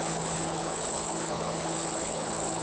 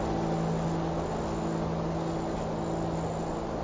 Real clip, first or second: second